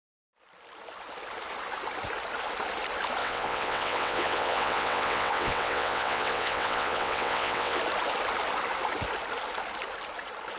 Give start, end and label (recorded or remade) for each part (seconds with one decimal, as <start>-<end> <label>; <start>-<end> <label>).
0.0-3.2 recorded; 3.2-7.8 remade; 7.8-10.6 recorded